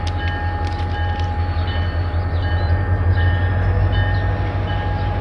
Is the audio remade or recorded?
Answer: recorded